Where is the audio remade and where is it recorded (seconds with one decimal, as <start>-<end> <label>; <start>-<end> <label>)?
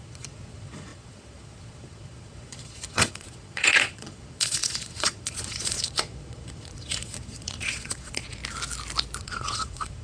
0.0-8.4 remade; 8.4-9.2 recorded; 9.2-10.0 remade